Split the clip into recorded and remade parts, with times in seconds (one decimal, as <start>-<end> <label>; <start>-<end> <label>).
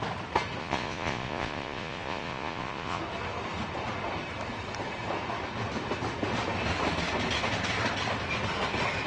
0.0-0.6 recorded; 0.6-3.0 remade; 3.0-9.1 recorded